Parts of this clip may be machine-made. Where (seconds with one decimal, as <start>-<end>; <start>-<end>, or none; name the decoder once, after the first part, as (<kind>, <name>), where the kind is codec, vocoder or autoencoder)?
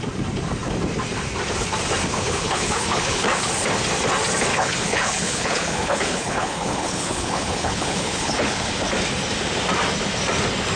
2.1-3.5 (codec, HILCodec); 4.5-8.7